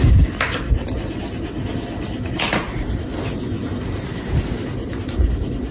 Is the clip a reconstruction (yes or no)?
no